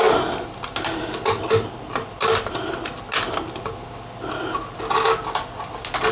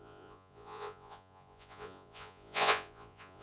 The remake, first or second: second